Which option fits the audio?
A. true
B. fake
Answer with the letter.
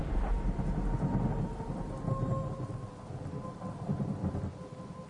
A